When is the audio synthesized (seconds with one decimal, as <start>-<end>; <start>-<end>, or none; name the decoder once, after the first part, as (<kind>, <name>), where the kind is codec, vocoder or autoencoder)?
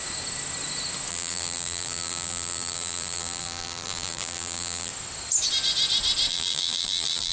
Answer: 1.1-4.9 (vocoder, BigVGAN v2); 6.3-7.3